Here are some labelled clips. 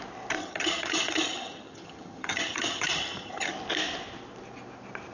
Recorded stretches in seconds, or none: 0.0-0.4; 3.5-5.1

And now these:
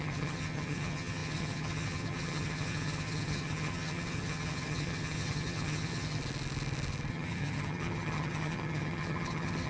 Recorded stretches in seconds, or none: 6.2-7.1

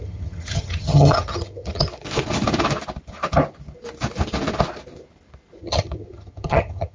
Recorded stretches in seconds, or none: 1.9-5.6

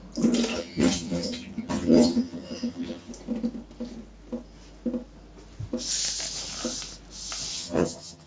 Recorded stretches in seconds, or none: 0.0-0.5; 3.1-7.5